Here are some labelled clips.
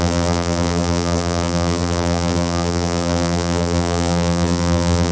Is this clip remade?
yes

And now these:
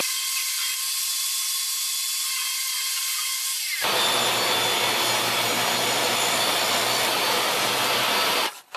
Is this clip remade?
no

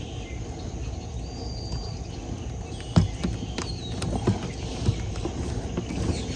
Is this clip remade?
no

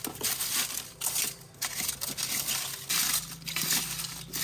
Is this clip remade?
no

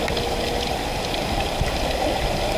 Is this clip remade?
no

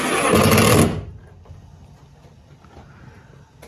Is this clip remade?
no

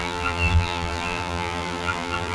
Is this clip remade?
yes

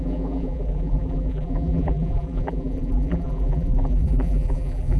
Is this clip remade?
yes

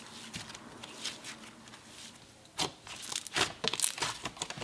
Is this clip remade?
no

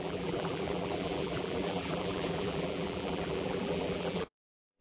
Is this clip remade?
yes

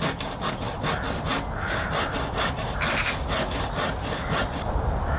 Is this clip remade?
no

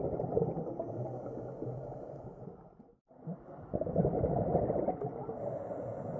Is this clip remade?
no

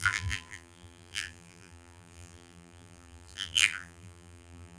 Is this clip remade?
yes